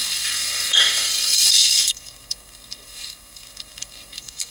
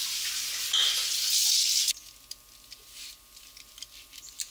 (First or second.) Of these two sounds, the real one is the second